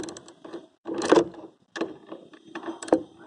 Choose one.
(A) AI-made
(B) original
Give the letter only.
A